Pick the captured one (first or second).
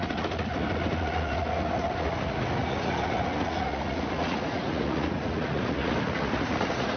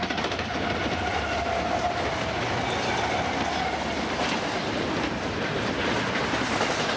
second